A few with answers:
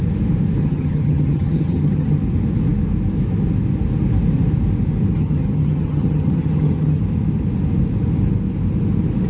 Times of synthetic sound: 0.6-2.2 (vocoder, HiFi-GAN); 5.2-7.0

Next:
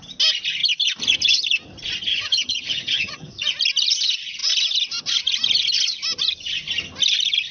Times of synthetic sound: 2.1-3.3 (vocoder, HiFi-GAN)

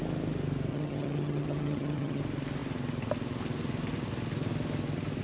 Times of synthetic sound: 0.7-2.2 (vocoder, HiFi-GAN)